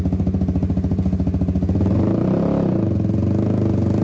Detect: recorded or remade recorded